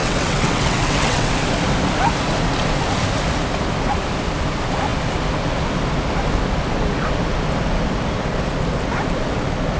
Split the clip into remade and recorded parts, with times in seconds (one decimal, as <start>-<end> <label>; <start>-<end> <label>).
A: 0.0-1.3 remade; 1.3-9.8 recorded